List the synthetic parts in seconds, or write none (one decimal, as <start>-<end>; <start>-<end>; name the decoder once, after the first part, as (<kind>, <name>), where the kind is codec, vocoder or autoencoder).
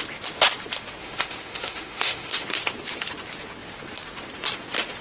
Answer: 1.0-2.3 (autoencoder, DAC-VAE)